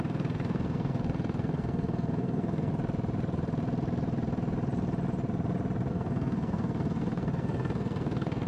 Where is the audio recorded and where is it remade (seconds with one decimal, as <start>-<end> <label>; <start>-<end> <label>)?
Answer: 0.0-2.7 remade; 2.7-5.9 recorded; 5.9-8.5 remade